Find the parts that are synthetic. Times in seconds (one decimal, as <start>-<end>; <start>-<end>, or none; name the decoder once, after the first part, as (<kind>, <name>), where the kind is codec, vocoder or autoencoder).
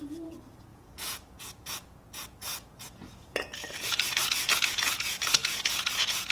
0.0-6.3 (vocoder, Vocos)